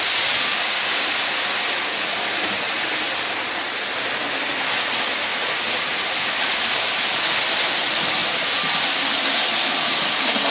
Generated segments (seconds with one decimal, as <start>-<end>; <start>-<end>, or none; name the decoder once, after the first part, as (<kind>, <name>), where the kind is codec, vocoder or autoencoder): none